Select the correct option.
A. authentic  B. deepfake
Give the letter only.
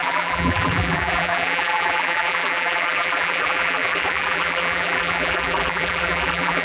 B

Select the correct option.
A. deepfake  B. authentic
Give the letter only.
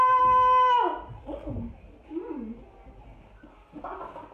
B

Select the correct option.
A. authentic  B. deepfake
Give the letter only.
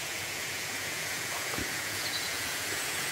B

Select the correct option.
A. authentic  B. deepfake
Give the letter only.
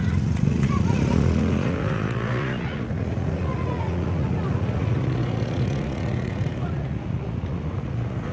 B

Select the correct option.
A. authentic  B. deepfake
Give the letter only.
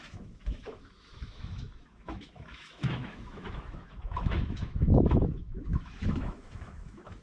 B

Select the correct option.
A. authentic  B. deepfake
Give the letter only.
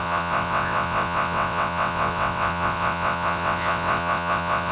B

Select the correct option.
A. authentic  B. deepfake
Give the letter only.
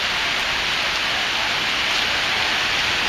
A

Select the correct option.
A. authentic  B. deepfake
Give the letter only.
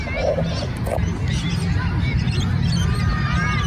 A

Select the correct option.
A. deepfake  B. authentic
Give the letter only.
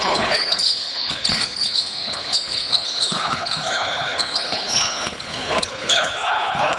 A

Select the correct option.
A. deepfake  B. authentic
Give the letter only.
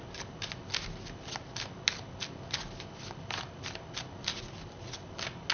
B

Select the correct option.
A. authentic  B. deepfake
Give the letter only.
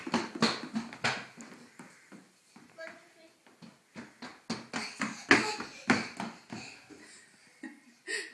A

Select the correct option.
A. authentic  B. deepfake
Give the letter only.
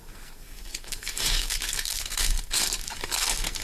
B